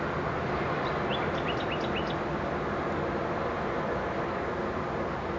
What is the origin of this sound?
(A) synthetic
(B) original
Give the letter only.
B